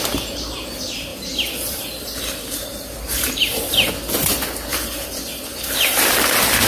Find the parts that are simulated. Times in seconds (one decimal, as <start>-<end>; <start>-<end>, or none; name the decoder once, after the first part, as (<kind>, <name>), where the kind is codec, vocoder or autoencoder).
1.1-3.9 (vocoder, BigVGAN v2); 4.7-6.0